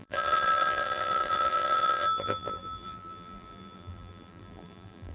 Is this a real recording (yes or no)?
no